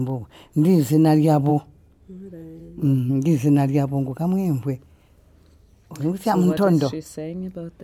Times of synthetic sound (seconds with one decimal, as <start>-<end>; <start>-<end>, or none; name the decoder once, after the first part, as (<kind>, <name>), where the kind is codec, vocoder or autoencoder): 2.6-3.1 (codec, SNAC)

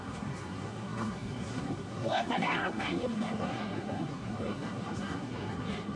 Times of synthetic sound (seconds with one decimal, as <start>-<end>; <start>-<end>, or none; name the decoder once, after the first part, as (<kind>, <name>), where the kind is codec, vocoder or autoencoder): 0.0-6.0 (codec, SNAC)

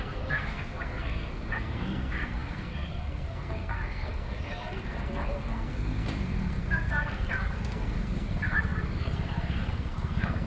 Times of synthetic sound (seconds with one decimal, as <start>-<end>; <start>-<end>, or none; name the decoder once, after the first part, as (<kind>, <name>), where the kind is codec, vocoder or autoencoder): 0.0-10.5 (codec, SNAC)

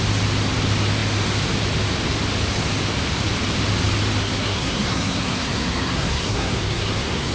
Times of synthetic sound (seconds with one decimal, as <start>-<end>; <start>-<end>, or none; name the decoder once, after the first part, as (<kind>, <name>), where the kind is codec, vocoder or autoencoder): 4.2-7.3 (codec, SNAC)

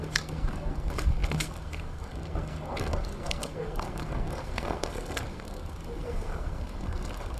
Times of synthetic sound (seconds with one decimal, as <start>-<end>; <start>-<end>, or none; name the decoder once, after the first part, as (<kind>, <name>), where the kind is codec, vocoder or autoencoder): 0.0-7.4 (codec, SNAC)

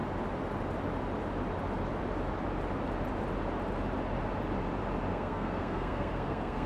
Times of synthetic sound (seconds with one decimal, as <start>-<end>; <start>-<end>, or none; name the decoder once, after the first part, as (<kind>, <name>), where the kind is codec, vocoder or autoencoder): 5.1-6.7 (codec, SNAC)

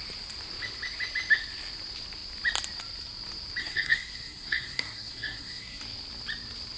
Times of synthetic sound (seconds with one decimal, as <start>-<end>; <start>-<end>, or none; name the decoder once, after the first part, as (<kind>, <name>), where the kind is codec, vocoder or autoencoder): 3.6-5.8 (codec, SNAC)